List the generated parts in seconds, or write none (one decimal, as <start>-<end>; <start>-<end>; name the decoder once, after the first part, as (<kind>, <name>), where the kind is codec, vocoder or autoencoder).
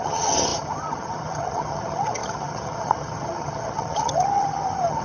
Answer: 0.0-5.0 (vocoder, HiFi-GAN)